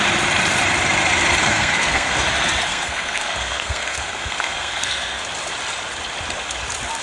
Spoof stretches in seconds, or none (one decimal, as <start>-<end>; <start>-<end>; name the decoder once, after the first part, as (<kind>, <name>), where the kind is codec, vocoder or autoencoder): 1.4-2.1 (codec, SNAC); 2.7-5.2

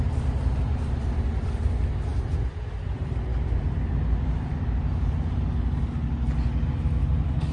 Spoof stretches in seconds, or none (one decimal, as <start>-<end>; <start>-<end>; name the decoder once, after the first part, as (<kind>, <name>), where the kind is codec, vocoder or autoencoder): none

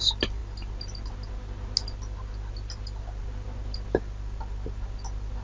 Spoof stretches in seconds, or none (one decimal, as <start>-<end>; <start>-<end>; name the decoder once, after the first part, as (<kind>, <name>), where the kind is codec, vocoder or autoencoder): none